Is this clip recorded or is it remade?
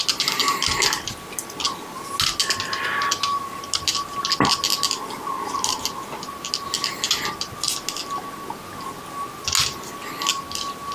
recorded